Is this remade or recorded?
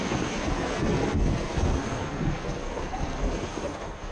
remade